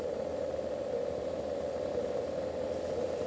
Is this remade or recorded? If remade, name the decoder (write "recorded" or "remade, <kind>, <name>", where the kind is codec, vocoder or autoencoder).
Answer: remade, vocoder, BigVGAN v2